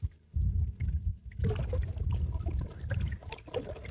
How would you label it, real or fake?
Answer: real